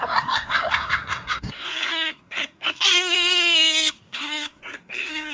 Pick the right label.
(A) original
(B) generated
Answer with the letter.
B